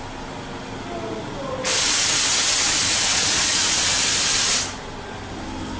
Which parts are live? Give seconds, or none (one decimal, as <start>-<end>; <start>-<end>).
0.0-3.1; 3.8-5.8